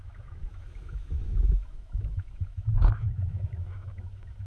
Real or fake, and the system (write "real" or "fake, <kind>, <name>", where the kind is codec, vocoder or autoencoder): fake, autoencoder, DAC-VAE